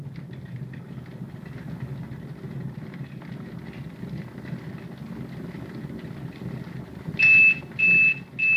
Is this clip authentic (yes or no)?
yes